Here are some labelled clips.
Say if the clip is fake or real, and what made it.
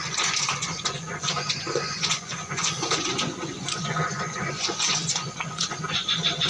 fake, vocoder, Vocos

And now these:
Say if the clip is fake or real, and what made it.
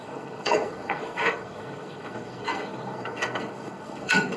fake, codec, SNAC